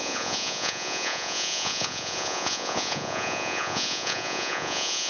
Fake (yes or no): yes